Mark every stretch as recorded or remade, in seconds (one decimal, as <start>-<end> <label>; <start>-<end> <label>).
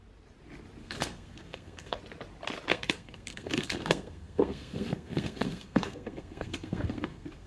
0.0-0.8 recorded; 0.8-2.0 remade; 2.0-2.7 recorded; 2.7-7.5 remade